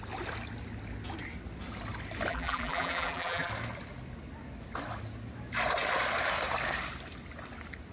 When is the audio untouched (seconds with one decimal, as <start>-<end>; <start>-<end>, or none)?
0.0-2.3; 3.5-7.9